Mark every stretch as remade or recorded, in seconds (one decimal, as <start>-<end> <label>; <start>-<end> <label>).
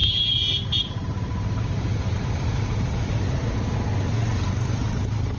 0.0-3.2 remade; 3.2-5.4 recorded